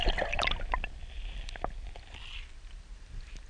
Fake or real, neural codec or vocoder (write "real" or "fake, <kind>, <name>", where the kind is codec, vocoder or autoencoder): real